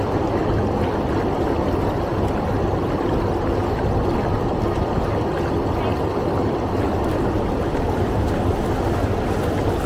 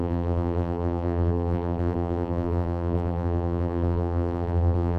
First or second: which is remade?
second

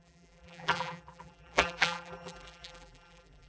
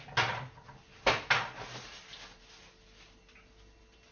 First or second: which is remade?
first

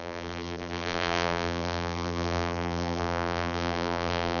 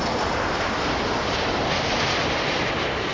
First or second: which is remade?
first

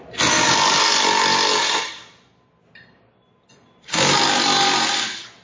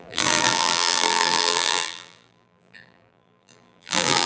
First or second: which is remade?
second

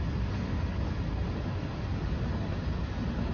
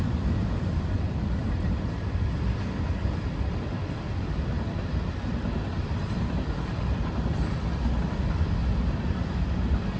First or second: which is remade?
second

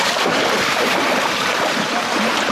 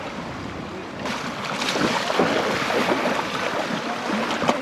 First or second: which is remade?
first